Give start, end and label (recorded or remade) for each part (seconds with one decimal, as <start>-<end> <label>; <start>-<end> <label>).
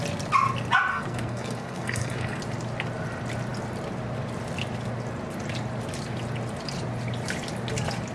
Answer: 0.0-0.9 recorded; 0.9-2.4 remade; 2.4-8.1 recorded